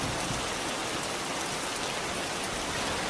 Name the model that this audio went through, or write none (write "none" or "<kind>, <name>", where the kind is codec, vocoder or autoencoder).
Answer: none